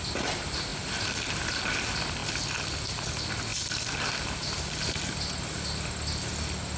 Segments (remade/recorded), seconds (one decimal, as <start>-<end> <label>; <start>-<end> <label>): 0.0-6.8 recorded